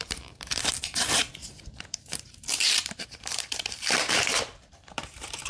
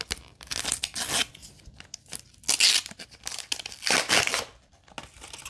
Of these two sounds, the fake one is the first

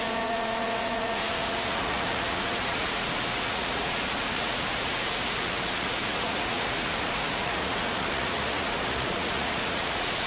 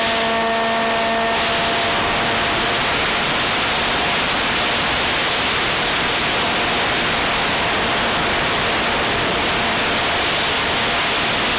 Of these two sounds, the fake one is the first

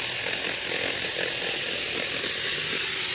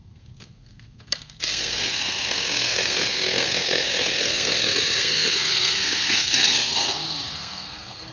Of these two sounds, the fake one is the second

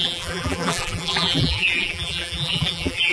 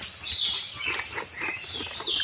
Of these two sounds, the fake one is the first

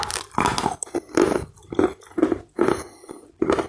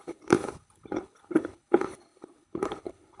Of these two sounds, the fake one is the second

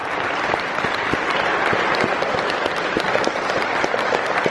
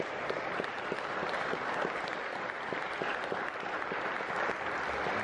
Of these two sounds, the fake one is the first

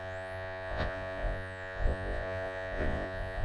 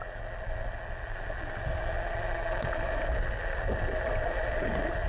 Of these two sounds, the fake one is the first